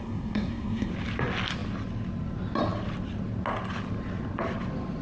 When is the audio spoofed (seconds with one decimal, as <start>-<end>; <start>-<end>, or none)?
0.0-0.9